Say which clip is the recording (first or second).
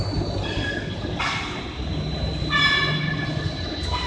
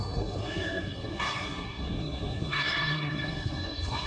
first